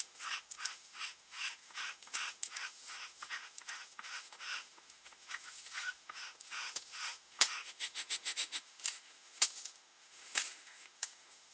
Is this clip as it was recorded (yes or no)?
no